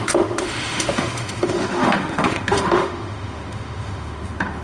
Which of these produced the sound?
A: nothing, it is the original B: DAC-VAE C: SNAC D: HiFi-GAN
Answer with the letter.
B